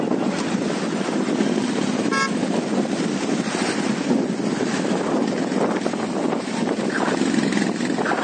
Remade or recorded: recorded